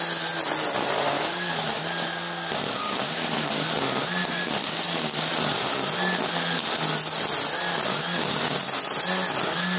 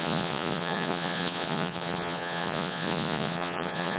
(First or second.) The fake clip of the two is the second